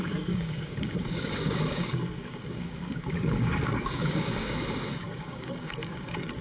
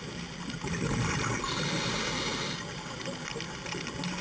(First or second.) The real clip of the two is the second